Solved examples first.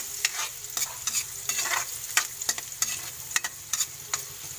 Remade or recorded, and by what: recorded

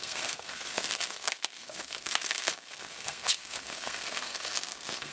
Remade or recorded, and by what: remade, codec, SNAC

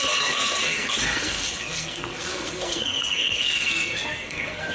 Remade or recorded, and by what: remade, codec, SNAC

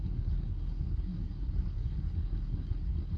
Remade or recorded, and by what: remade, codec, SNAC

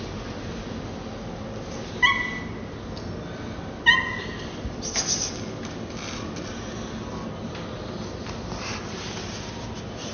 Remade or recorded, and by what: recorded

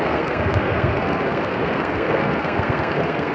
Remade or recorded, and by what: remade, codec, SNAC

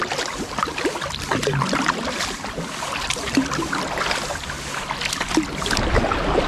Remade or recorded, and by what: recorded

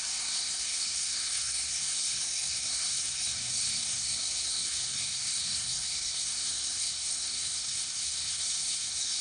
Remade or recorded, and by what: remade, codec, SNAC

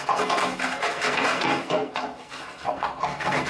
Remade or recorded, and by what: remade, codec, SNAC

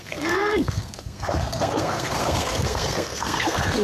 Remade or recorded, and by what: remade, codec, SNAC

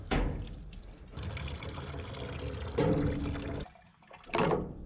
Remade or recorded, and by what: recorded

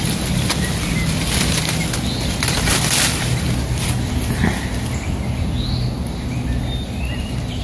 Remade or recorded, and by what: recorded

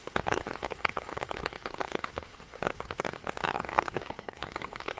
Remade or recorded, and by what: remade, codec, SNAC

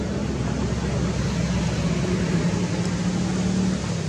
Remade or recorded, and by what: recorded